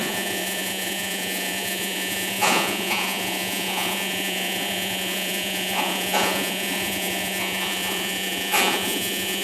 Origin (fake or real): fake